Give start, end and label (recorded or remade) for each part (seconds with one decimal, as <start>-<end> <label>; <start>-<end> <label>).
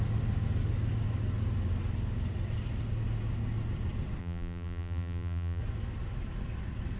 0.0-4.2 recorded; 4.2-5.6 remade; 5.6-7.0 recorded